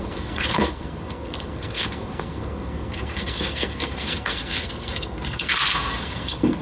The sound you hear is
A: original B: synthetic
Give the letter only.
B